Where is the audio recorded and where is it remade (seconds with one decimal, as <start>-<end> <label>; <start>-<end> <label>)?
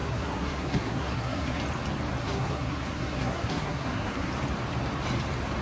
0.0-1.6 remade; 1.6-2.2 recorded; 2.2-4.3 remade; 4.3-5.6 recorded